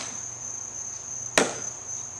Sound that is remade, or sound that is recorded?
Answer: recorded